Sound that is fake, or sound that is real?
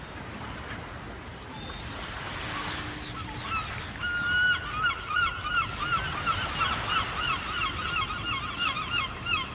real